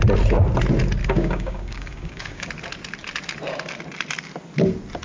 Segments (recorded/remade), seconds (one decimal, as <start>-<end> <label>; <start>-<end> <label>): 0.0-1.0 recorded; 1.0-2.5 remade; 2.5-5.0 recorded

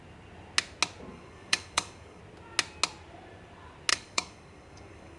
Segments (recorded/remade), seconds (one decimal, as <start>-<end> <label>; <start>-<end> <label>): 0.0-1.1 recorded; 1.1-2.2 remade; 2.2-3.9 recorded; 3.9-5.2 remade

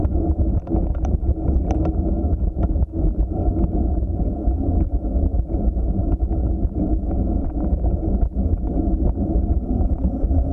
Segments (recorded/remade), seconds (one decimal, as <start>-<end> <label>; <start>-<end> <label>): 0.0-10.5 recorded

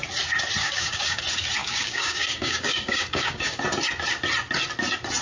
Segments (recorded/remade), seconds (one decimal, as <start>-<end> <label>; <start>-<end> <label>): 0.0-0.6 recorded; 0.6-1.2 remade; 1.2-1.6 recorded; 1.6-3.6 remade; 3.6-5.2 recorded

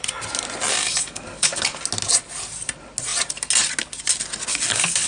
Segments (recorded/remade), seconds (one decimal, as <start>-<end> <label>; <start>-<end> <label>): 0.0-0.7 recorded; 0.7-1.8 remade; 1.8-4.5 recorded; 4.5-5.1 remade

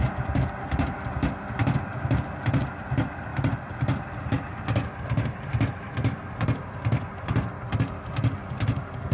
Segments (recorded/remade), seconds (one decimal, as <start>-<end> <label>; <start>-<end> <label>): 0.0-9.1 recorded